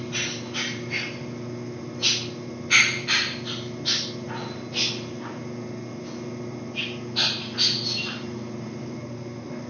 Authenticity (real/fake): real